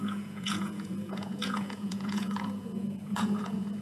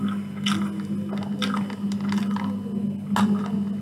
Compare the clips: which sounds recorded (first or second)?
second